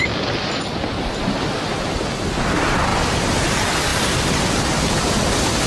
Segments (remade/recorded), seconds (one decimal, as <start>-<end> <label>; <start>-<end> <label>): 0.0-5.7 recorded